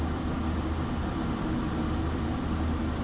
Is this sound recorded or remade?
recorded